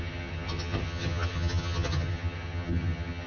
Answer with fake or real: fake